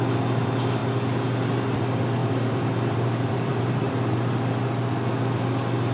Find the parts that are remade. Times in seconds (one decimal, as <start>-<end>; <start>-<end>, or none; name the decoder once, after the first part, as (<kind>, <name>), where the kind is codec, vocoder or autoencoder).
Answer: 2.2-3.9 (vocoder, BigVGAN v2)

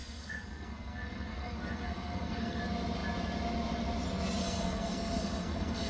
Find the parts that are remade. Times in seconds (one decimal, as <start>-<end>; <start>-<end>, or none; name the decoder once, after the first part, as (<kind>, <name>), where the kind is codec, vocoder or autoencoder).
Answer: 0.0-2.6 (codec, SNAC); 4.4-5.9

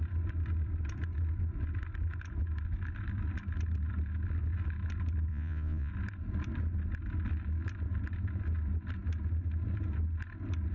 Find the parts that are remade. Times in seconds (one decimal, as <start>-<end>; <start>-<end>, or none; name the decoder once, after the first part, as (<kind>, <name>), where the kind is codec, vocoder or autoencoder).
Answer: 5.3-5.9 (vocoder, Vocos)

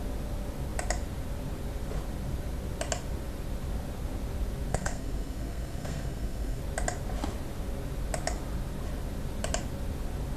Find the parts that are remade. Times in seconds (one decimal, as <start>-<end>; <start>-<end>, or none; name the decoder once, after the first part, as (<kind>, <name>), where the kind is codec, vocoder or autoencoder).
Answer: 4.7-6.6 (codec, SNAC)

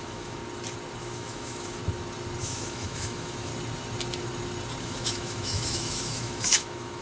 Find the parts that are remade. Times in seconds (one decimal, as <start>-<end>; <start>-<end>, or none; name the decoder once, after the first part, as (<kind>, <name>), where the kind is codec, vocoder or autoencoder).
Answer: 0.0-0.4 (autoencoder, DAC-VAE); 1.0-1.8; 2.4-3.5; 4.8-7.0

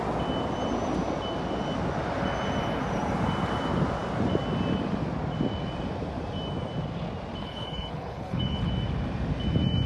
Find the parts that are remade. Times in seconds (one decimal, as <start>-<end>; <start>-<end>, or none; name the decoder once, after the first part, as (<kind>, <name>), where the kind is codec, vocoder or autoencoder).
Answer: 7.4-8.7 (codec, HILCodec)